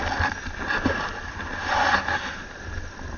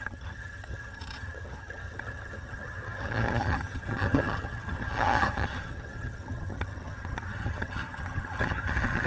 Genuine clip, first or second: first